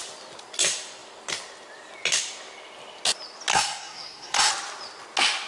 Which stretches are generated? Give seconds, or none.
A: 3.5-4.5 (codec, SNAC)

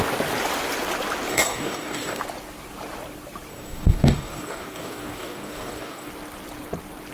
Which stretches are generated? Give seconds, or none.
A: 1.3-2.2 (codec, DAC); 3.5-6.1

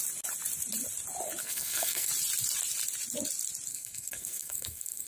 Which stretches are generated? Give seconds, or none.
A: 1.4-2.1 (codec, SNAC); 3.7-5.1